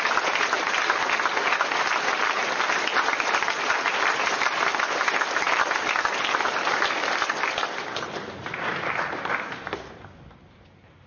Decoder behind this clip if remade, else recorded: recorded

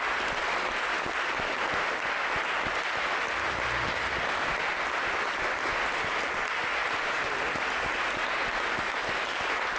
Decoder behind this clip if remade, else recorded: recorded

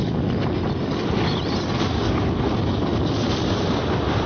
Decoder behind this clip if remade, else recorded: recorded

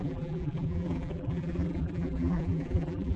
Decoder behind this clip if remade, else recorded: remade, vocoder, BigVGAN v2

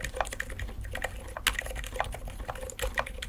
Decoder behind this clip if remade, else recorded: recorded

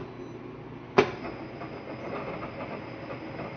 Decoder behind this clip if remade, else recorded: recorded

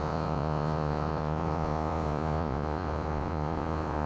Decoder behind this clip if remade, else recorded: remade, vocoder, Vocos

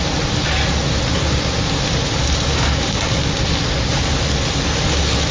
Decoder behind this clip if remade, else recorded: recorded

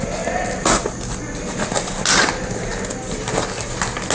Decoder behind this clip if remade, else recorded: recorded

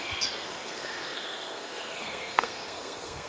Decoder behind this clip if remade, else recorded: remade, codec, SNAC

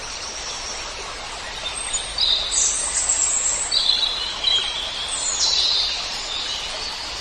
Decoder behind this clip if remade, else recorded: recorded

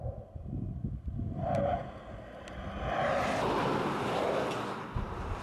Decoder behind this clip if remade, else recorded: recorded